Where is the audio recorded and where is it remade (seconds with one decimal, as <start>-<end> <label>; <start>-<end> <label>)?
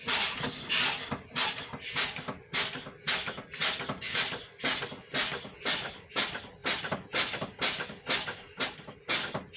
0.0-9.6 recorded